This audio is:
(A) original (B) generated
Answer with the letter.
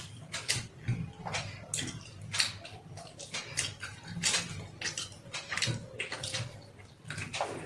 A